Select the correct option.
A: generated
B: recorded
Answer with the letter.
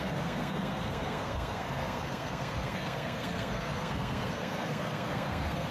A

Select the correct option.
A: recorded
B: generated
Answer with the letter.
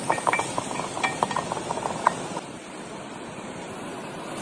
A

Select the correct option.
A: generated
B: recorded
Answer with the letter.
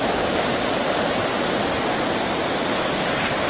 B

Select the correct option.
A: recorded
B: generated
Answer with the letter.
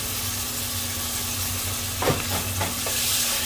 A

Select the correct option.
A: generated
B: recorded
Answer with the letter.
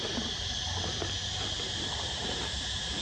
A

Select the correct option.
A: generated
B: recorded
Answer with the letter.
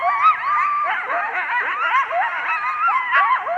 B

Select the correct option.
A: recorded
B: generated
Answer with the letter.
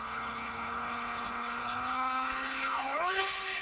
B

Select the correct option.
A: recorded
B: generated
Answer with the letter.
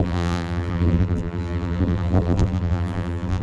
B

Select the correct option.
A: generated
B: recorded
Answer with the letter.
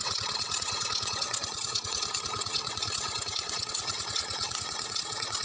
A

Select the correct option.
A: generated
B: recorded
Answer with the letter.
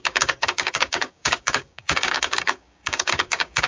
A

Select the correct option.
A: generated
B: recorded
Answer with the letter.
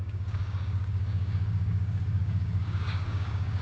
A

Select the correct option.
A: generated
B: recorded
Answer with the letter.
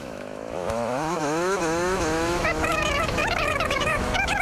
A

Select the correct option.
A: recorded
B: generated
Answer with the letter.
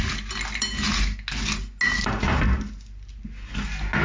A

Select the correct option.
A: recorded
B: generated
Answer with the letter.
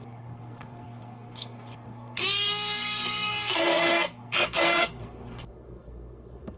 B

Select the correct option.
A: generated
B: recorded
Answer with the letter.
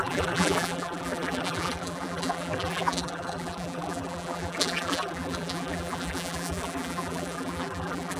A